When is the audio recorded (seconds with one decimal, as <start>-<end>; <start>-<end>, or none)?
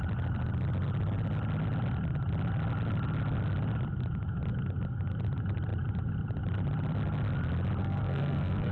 0.0-7.8